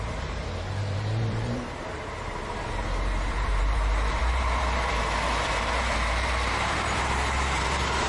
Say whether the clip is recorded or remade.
remade